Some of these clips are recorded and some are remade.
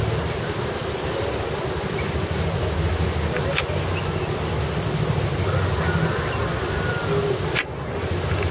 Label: recorded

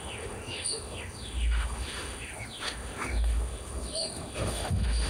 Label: remade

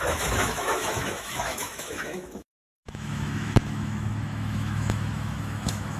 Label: remade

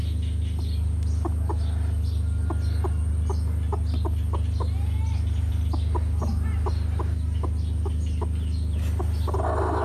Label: recorded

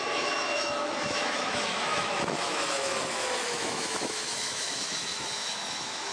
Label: remade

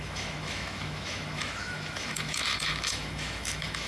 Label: remade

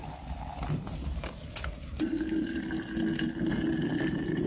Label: recorded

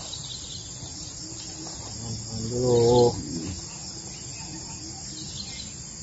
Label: recorded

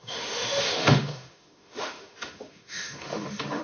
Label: remade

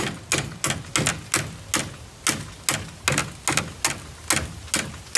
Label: recorded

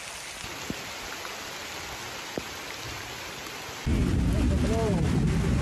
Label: recorded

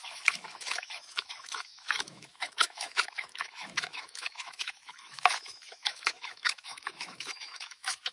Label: remade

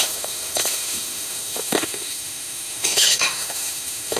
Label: remade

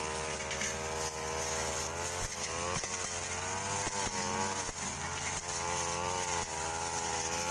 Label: recorded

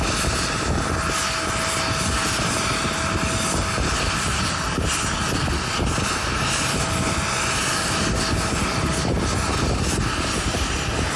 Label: recorded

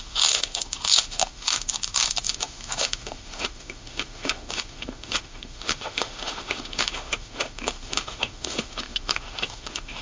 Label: remade